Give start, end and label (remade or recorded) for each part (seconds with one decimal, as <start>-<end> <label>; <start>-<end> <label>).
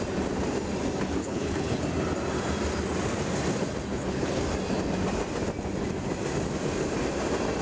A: 0.0-1.2 recorded; 1.2-1.8 remade; 1.8-3.9 recorded; 3.9-4.4 remade; 4.4-7.6 recorded